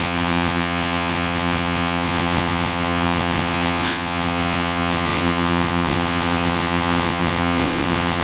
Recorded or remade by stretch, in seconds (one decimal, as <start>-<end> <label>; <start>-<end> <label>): 0.0-8.2 remade